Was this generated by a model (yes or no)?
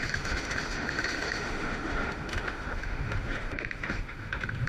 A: yes